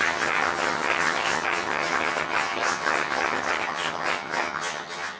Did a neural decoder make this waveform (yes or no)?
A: yes